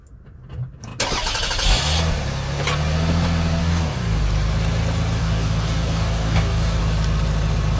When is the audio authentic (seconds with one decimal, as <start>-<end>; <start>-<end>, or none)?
0.0-3.6; 4.2-5.2; 6.8-7.8